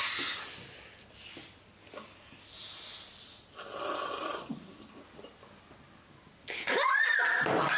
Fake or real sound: real